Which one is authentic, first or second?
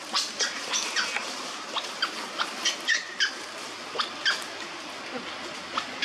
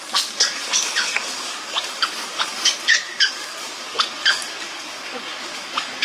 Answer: first